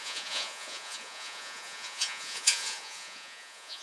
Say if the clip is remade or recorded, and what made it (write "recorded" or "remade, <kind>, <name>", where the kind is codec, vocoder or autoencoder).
remade, vocoder, Vocos